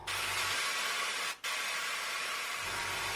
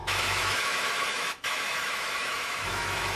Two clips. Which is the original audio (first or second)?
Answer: first